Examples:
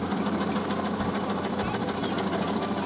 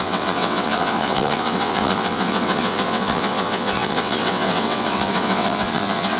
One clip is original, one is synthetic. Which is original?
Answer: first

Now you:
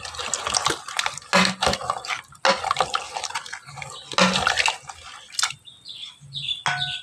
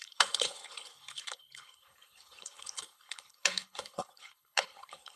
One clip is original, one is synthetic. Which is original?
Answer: first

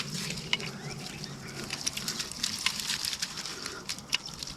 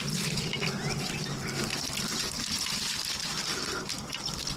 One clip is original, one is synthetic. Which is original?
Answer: second